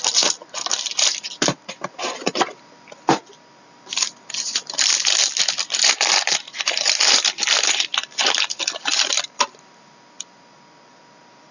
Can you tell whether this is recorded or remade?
recorded